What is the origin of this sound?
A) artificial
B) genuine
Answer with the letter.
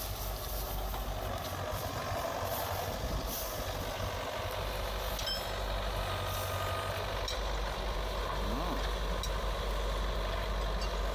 B